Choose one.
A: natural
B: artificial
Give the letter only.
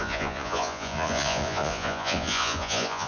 B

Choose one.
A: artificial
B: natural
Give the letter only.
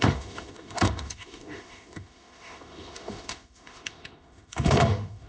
A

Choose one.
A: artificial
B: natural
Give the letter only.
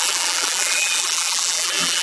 A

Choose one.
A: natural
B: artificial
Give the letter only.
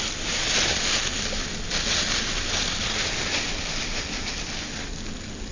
A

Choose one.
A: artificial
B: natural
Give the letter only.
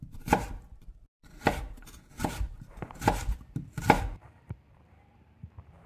A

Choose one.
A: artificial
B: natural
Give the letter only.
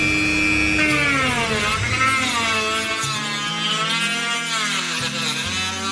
B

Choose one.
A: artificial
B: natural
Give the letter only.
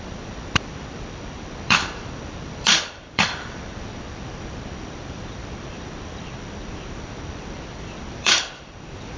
A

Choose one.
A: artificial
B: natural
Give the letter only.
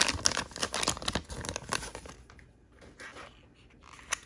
B